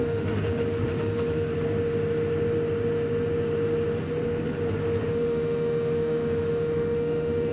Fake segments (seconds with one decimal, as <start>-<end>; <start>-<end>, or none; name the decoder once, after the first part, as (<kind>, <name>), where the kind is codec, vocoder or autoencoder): 0.0-1.5 (autoencoder, DAC-VAE); 5.1-7.5